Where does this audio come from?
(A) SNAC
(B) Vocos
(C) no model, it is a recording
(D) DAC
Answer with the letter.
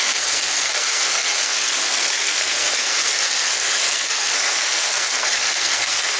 A